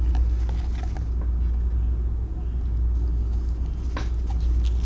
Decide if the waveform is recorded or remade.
recorded